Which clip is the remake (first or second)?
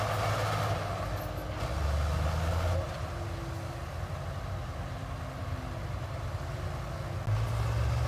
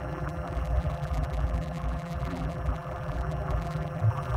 second